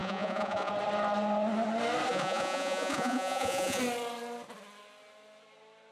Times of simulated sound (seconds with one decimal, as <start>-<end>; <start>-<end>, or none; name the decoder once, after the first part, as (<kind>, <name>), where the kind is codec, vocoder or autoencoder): 0.0-0.7 (vocoder, Vocos); 2.1-3.8